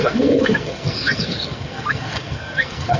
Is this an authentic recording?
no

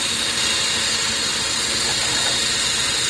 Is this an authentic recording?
yes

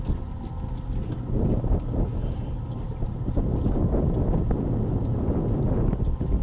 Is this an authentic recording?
yes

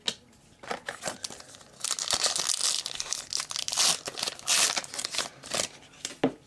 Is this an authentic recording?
yes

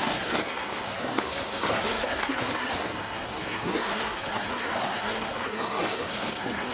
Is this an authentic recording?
no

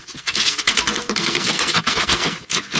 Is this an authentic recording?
no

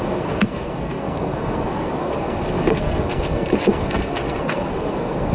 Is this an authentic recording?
no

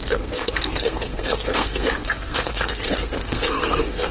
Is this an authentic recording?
no